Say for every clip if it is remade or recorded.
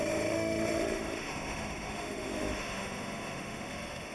remade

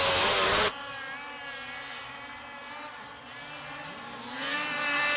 recorded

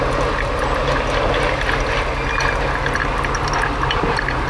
recorded